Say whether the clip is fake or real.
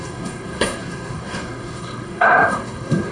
fake